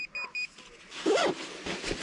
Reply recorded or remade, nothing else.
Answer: recorded